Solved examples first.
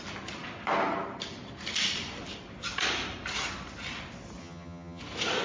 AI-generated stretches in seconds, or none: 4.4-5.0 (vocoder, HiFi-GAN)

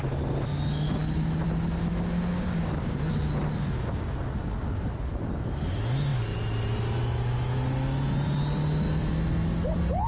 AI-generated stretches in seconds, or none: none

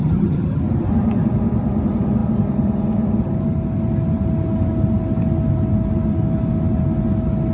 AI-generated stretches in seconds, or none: 0.0-0.6 (vocoder, HiFi-GAN)